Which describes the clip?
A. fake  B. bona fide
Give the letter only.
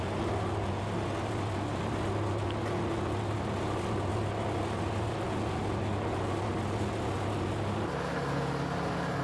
B